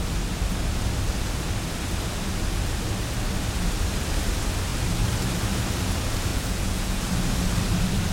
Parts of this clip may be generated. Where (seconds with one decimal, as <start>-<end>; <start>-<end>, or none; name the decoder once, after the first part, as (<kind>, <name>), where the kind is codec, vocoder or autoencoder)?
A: 6.3-7.0 (vocoder, Vocos)